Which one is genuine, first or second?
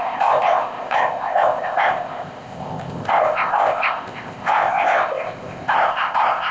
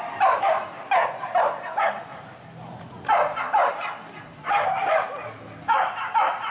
second